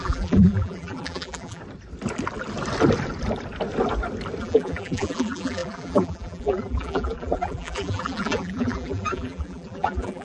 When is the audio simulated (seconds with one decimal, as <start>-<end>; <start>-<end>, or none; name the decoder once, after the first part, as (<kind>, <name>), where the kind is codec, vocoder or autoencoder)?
0.0-1.6 (vocoder, BigVGAN v2); 4.4-10.2